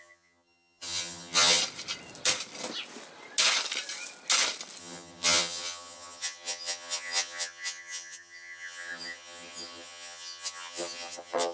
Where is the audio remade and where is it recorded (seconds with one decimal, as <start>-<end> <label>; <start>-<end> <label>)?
0.0-1.6 remade; 1.6-4.8 recorded; 4.8-11.5 remade